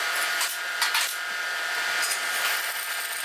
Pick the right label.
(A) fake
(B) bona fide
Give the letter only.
B